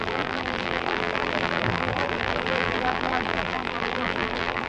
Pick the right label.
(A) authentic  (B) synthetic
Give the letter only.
B